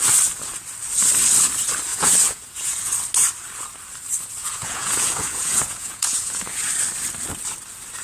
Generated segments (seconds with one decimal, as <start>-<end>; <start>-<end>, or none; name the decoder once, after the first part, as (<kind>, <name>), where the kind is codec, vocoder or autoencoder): 1.9-2.9 (vocoder, Vocos); 4.4-6.7